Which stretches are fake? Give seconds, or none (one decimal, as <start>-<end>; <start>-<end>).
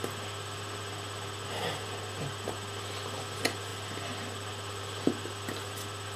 none